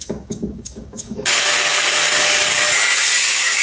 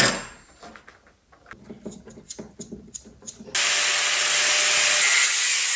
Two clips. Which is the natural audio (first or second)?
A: second